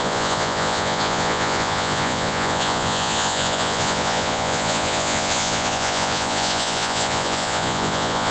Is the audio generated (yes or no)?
yes